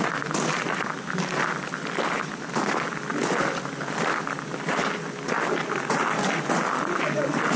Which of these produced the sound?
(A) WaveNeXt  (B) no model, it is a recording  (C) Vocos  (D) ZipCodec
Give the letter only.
B